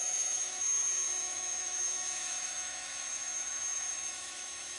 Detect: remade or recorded remade